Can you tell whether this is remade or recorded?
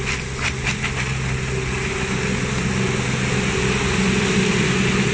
recorded